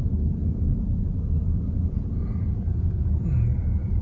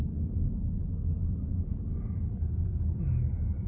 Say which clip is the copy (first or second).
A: first